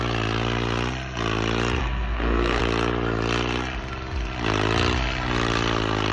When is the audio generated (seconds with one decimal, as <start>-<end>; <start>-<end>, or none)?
1.8-2.6